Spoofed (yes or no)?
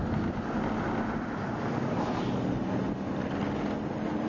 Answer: no